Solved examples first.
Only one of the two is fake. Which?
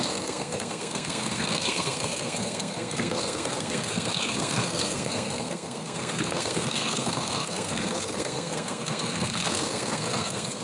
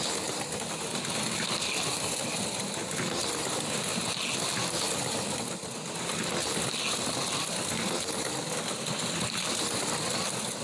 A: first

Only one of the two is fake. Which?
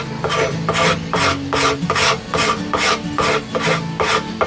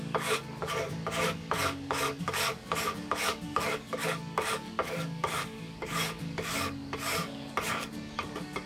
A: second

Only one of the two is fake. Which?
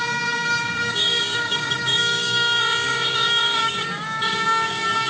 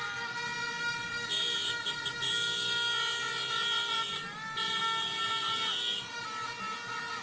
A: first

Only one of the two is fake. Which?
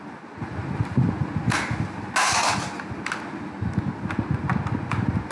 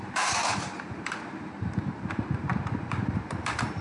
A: second